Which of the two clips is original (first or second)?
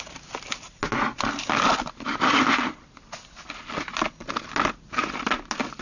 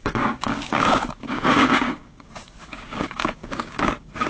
first